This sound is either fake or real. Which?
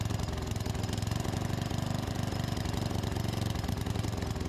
real